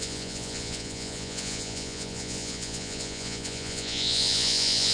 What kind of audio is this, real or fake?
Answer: fake